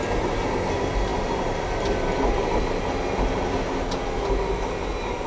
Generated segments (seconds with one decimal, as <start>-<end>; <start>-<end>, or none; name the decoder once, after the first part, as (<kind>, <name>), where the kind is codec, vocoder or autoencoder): none